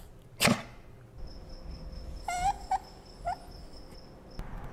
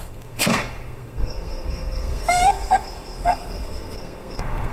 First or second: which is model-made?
second